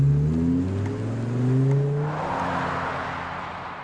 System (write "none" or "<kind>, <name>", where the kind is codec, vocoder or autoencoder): none